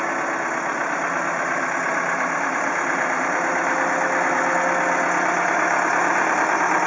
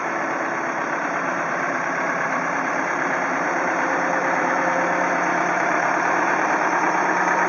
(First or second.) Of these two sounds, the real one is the first